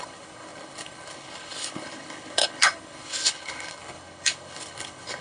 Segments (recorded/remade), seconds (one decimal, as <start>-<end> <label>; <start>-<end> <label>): 0.0-5.2 remade